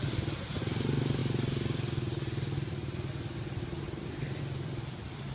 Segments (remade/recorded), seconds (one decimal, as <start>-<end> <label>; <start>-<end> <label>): 0.0-5.3 recorded